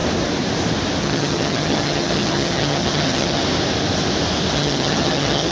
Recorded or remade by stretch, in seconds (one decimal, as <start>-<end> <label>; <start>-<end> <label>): 0.0-1.0 recorded; 1.0-3.4 remade; 3.4-4.5 recorded; 4.5-5.5 remade